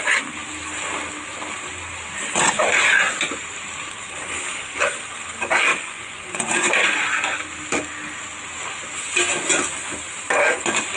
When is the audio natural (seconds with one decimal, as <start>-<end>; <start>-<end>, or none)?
0.0-5.7; 6.7-11.0